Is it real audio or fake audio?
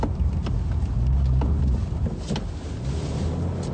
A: real